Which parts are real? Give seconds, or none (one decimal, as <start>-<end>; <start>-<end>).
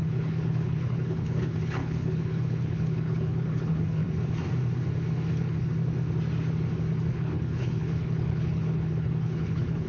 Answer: 4.0-5.3; 5.7-7.1